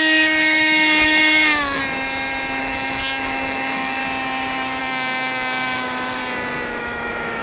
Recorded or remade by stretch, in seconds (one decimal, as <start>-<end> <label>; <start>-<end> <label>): 0.0-1.8 remade; 1.8-2.6 recorded; 2.6-4.0 remade; 4.0-4.8 recorded; 4.8-6.2 remade; 6.2-6.8 recorded; 6.8-7.4 remade